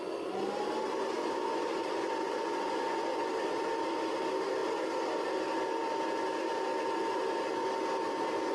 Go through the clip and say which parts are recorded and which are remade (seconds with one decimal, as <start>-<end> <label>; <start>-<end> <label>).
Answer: 0.0-1.2 recorded; 1.2-3.3 remade; 3.3-8.5 recorded